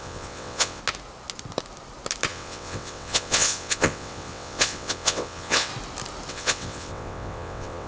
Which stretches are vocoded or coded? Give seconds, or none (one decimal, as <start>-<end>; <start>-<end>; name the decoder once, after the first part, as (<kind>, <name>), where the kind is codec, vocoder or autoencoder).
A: 0.0-0.8 (vocoder, WaveNeXt); 2.3-5.7; 6.3-7.9